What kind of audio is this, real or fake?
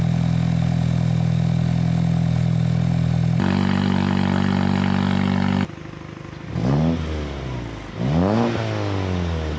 real